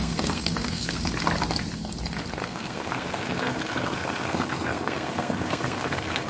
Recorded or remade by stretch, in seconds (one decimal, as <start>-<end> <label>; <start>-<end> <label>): 0.0-1.1 remade; 1.1-2.4 recorded; 2.4-6.3 remade